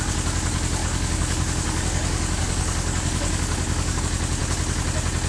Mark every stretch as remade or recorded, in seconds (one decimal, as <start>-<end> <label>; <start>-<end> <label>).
0.0-0.8 recorded; 0.8-4.0 remade; 4.0-5.3 recorded